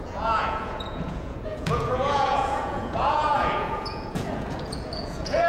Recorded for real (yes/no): no